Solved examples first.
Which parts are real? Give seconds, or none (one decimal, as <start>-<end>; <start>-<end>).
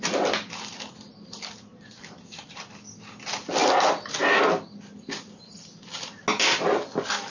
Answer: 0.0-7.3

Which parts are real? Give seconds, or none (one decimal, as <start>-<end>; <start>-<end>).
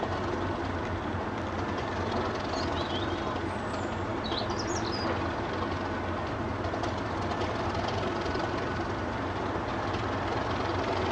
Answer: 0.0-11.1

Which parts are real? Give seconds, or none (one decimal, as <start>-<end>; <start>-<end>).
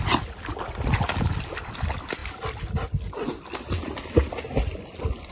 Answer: 0.0-5.3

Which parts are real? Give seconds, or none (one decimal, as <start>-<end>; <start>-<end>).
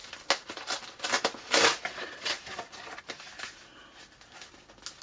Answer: 0.0-5.0